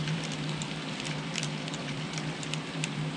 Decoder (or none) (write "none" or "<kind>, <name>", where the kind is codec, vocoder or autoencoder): vocoder, BigVGAN v2